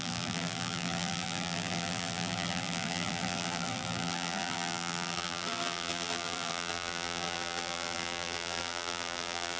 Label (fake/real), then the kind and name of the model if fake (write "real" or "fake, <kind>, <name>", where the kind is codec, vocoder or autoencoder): fake, vocoder, BigVGAN v2